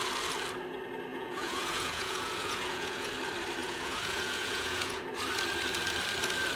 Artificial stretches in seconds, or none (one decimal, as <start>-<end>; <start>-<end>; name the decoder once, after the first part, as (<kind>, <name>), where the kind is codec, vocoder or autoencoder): 1.1-3.1 (vocoder, Vocos); 3.6-5.0

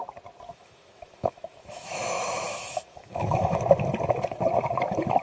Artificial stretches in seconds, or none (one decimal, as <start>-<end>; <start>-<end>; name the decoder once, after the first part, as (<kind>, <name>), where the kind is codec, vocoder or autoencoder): 0.5-3.6 (autoencoder, DAC-VAE)

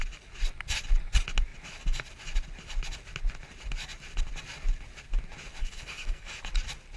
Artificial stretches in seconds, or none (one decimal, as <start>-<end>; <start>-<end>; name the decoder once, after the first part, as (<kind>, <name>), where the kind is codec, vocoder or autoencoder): 5.6-6.4 (codec, SNAC)

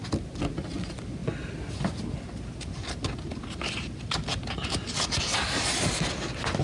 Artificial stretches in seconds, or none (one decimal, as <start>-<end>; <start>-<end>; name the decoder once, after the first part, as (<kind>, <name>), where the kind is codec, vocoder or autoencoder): none